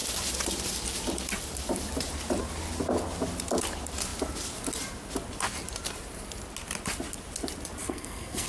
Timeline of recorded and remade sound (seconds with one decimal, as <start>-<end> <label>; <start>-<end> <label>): 0.0-7.8 recorded; 7.8-8.5 remade